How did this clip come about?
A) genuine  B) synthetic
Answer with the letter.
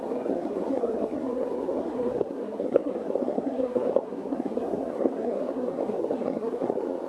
B